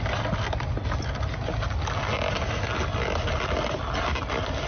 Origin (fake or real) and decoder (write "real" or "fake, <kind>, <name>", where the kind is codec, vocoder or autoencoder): real